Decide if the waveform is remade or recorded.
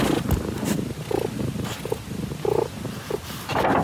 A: recorded